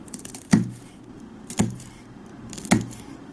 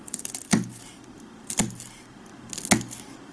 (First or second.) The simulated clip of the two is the first